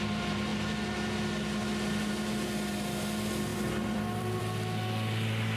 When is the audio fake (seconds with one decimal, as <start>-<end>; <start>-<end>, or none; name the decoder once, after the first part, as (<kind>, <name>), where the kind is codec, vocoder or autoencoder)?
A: 3.5-4.4 (vocoder, BigVGAN v2)